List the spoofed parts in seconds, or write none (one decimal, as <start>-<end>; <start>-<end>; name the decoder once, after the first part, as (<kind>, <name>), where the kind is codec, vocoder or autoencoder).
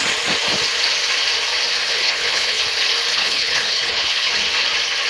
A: 1.8-2.6 (codec, HILCodec); 3.1-4.3